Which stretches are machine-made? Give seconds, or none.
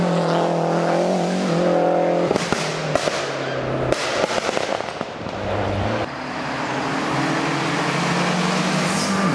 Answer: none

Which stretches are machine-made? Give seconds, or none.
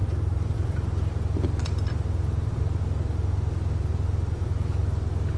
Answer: 0.0-2.8 (vocoder, BigVGAN v2); 3.9-4.8